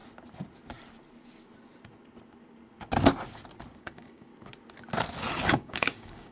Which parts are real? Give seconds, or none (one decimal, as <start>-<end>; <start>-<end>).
0.0-3.8; 4.3-5.5